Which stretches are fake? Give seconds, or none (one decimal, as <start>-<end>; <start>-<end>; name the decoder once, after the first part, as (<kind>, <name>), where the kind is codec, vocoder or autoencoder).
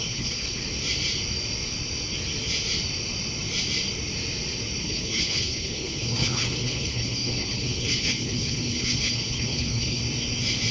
0.0-0.6 (codec, HILCodec); 4.8-10.0